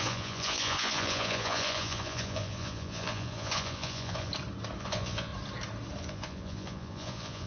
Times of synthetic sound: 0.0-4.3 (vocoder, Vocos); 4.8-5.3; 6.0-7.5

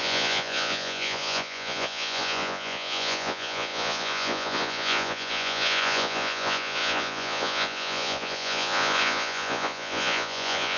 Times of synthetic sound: 0.0-10.8 (vocoder, Vocos)

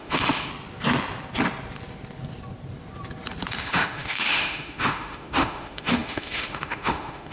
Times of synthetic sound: 0.0-0.5 (autoencoder, DAC-VAE); 3.6-7.3

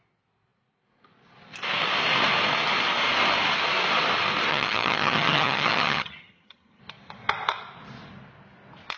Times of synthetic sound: 4.5-6.8 (vocoder, HiFi-GAN)

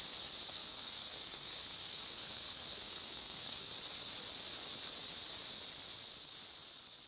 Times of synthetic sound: 0.5-3.7 (codec, SNAC)